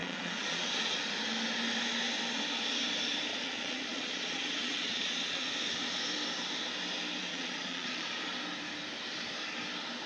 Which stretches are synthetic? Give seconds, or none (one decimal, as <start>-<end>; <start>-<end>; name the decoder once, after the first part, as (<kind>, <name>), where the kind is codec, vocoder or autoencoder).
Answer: 0.0-1.0 (vocoder, Vocos); 3.3-5.5; 7.3-8.2